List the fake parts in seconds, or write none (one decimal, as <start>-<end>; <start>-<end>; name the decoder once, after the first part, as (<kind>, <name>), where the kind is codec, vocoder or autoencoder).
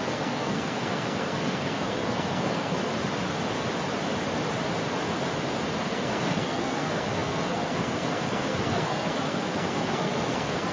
0.0-2.9 (codec, SNAC); 5.8-10.7